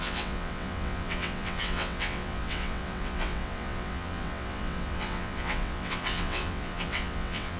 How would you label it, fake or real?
fake